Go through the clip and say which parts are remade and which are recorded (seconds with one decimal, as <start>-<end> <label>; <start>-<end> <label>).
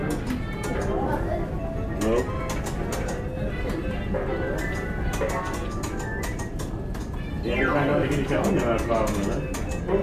0.0-2.9 recorded; 2.9-5.3 remade; 5.3-7.9 recorded; 7.9-8.5 remade; 8.5-10.0 recorded